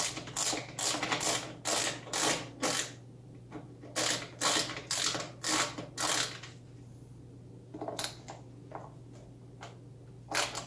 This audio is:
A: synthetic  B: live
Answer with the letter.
B